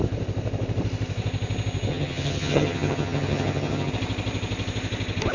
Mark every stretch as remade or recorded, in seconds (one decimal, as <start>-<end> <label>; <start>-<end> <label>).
0.0-1.9 recorded; 1.9-3.9 remade; 3.9-5.3 recorded